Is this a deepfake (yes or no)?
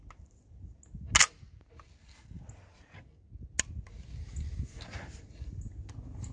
no